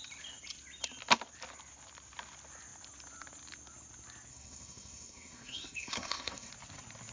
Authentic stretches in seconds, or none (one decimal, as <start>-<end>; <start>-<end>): 0.0-4.3; 6.5-7.1